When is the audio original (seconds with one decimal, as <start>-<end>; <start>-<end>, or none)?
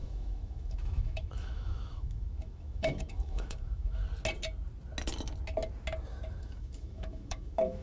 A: 4.0-6.4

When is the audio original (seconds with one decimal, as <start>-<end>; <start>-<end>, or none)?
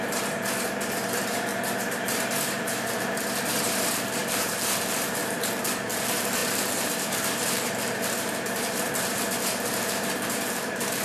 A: none